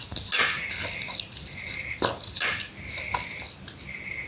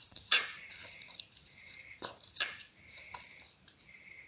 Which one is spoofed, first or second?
second